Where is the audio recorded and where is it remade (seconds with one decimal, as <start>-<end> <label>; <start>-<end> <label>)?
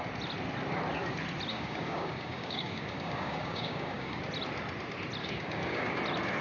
0.0-1.5 recorded; 1.5-4.2 remade; 4.2-5.2 recorded; 5.2-6.0 remade; 6.0-6.4 recorded